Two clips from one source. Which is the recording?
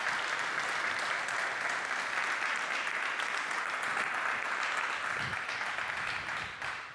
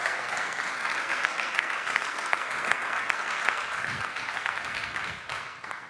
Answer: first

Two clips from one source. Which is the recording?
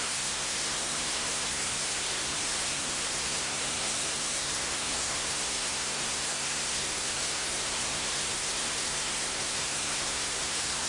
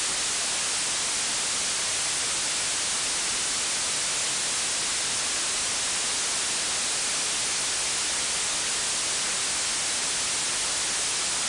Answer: second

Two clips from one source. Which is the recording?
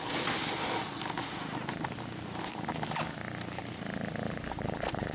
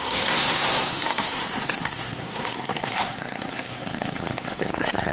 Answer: first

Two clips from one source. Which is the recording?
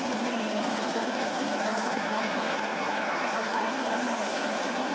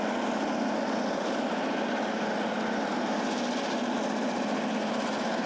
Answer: second